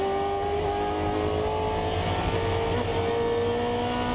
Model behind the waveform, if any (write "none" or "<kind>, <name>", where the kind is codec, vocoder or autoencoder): none